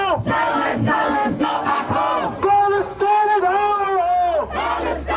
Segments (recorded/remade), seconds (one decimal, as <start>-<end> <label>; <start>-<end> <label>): 0.0-0.5 recorded; 0.5-1.9 remade; 1.9-2.9 recorded; 2.9-3.4 remade; 3.4-5.2 recorded